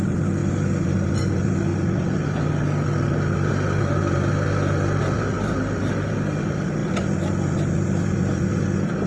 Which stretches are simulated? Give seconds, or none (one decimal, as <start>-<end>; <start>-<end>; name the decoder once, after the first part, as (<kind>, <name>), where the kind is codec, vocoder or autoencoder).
none